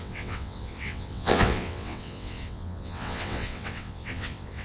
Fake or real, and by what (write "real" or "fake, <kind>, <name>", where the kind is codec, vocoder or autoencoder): fake, vocoder, WaveNeXt